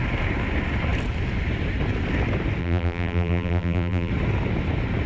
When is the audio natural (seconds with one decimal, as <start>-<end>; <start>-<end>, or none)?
0.0-2.6; 4.1-5.1